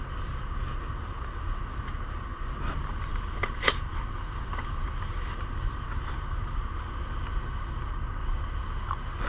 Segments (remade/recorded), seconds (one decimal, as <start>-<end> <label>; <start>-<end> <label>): 0.0-0.6 recorded; 0.6-1.3 remade; 1.3-3.1 recorded; 3.1-6.7 remade; 6.7-9.3 recorded